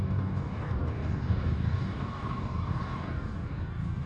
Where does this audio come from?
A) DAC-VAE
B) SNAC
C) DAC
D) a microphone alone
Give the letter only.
C